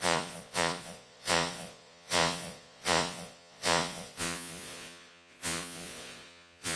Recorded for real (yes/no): no